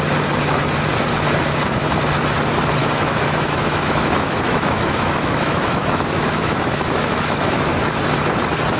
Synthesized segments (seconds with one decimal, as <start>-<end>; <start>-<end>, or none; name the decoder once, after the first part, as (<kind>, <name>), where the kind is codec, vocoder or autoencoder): 2.8-7.8 (autoencoder, DAC-VAE)